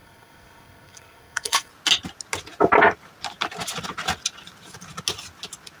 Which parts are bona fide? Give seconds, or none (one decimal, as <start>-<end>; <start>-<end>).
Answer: 1.7-5.8